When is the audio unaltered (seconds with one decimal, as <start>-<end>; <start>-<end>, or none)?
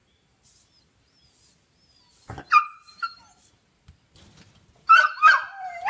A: 0.0-5.9